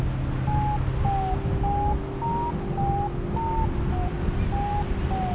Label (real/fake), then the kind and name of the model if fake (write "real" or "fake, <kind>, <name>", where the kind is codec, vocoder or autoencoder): real